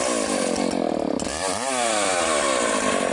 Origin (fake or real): real